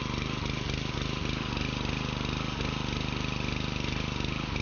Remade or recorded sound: recorded